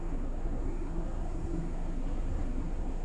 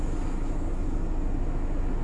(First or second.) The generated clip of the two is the first